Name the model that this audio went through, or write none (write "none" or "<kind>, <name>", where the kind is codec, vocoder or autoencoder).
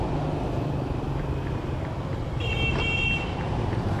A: none